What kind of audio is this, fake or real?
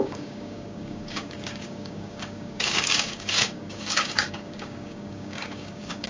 fake